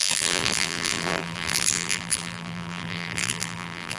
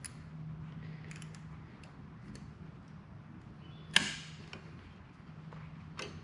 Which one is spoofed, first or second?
first